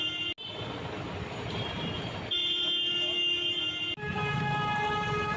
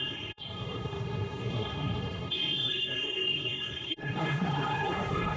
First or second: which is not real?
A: second